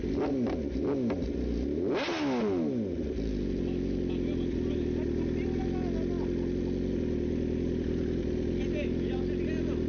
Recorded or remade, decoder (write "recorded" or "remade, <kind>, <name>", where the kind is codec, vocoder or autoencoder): recorded